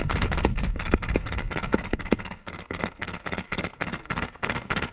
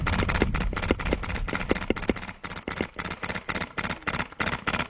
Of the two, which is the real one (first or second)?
second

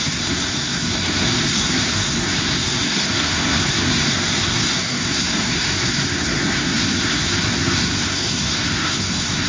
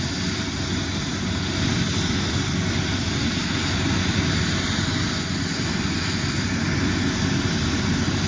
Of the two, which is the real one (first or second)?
second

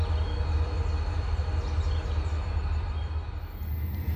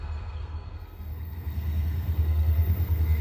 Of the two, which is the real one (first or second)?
first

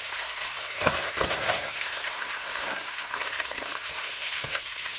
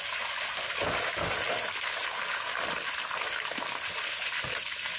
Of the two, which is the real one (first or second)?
second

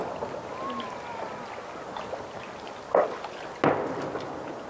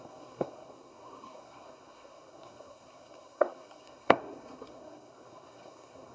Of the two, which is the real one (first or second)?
first